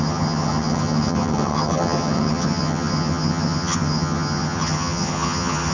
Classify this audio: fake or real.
fake